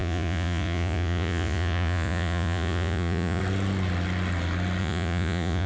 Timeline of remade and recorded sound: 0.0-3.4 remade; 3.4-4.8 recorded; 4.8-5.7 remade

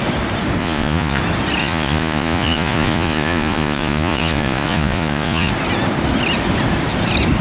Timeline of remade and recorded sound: 0.0-0.6 recorded; 0.6-1.2 remade; 1.2-1.6 recorded; 1.6-5.5 remade; 5.5-7.4 recorded